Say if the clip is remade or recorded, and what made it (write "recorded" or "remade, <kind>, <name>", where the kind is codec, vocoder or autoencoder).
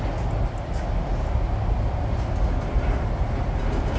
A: recorded